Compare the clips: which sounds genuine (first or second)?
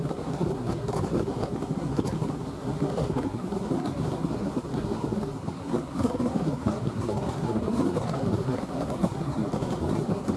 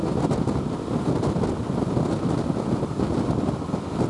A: second